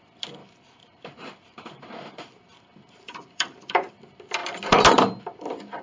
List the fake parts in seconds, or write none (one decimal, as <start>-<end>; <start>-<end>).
0.4-3.9